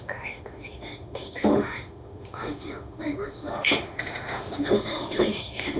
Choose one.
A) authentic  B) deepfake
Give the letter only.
B